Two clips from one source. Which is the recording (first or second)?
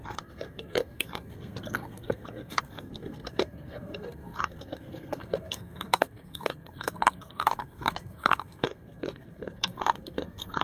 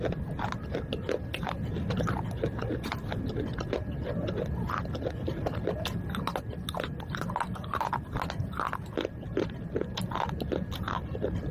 second